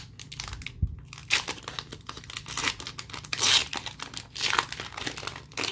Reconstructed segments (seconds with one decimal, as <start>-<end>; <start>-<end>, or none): none